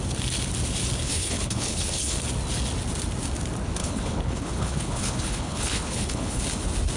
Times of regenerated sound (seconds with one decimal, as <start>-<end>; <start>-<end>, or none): 1.0-2.2; 3.8-6.4